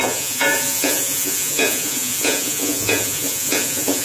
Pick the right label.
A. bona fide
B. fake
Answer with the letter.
B